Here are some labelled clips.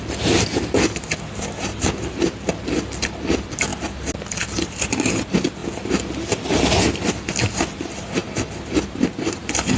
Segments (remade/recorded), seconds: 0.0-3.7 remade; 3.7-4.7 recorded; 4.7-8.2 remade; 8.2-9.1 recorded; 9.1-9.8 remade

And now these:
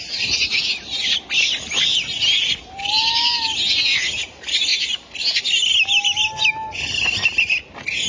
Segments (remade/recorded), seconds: 0.0-8.1 recorded

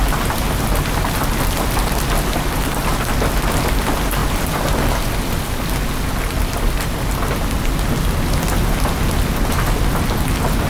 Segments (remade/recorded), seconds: 0.0-10.7 recorded

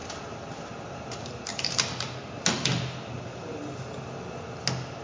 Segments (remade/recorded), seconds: 0.0-1.8 remade; 1.8-2.7 recorded; 2.7-3.6 remade; 3.6-5.0 recorded

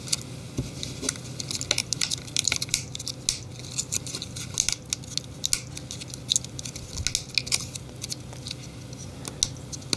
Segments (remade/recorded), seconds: 0.0-1.8 recorded; 1.8-3.1 remade; 3.1-10.0 recorded

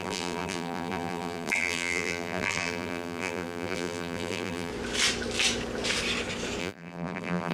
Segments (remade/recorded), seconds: 0.0-4.7 remade; 4.7-6.6 recorded; 6.6-7.5 remade

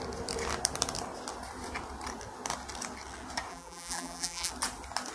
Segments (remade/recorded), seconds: 0.0-3.5 recorded; 3.5-4.5 remade; 4.5-5.1 recorded

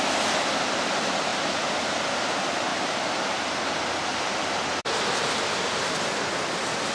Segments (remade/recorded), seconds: 0.0-1.3 recorded; 1.3-2.1 remade; 2.1-2.7 recorded; 2.7-3.2 remade; 3.2-4.1 recorded; 4.1-6.9 remade